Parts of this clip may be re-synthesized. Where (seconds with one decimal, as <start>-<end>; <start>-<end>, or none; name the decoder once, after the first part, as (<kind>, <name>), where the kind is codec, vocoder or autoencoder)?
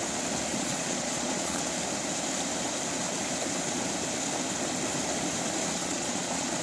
0.5-1.6 (vocoder, Vocos); 5.8-6.6